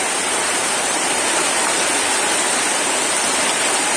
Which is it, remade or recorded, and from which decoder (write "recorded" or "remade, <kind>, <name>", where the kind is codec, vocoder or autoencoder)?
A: recorded